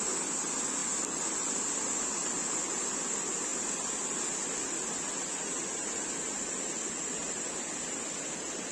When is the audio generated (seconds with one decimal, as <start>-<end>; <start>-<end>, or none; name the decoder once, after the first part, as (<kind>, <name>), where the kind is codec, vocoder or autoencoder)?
none